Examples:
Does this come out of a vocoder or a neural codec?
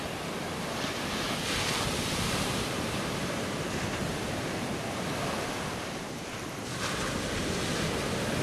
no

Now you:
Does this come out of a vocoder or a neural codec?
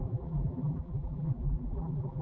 yes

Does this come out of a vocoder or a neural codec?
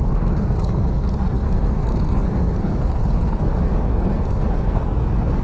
yes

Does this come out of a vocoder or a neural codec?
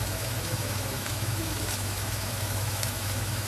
yes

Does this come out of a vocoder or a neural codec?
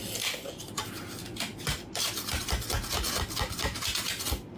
no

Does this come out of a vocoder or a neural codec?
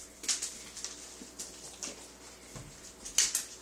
no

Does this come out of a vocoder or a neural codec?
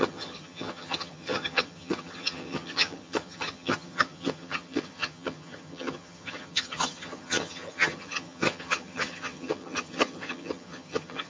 yes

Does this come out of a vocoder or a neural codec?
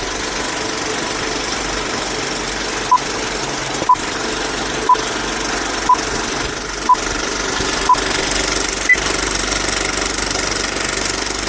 no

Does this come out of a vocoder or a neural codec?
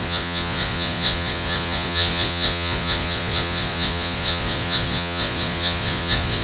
yes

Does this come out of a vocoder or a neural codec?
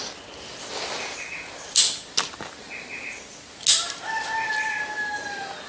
no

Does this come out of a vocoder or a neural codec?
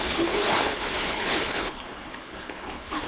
yes